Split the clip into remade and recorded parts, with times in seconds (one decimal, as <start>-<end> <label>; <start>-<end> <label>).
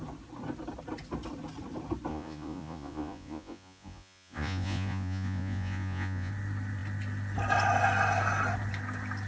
0.0-2.1 recorded; 2.1-6.3 remade; 6.3-9.3 recorded